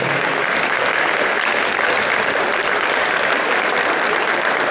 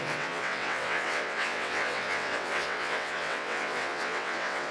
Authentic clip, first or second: first